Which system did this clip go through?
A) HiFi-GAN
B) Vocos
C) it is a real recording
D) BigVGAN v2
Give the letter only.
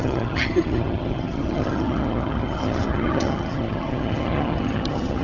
A